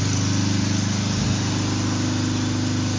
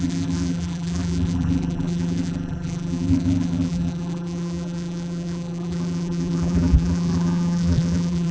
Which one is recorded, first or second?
first